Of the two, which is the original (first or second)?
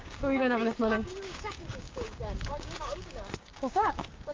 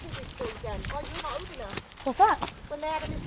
second